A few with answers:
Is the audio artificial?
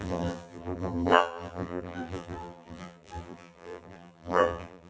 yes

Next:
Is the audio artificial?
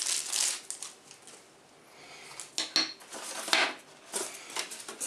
no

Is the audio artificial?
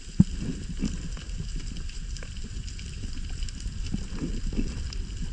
no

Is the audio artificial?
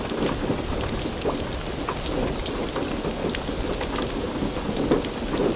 no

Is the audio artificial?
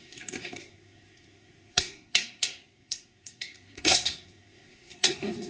yes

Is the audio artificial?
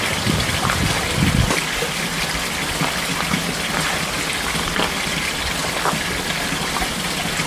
no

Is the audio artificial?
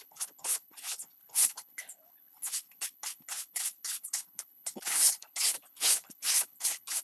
yes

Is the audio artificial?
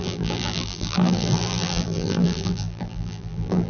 yes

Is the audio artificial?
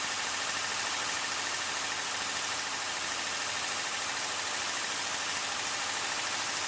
no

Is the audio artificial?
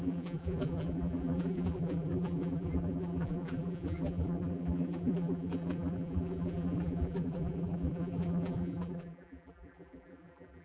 yes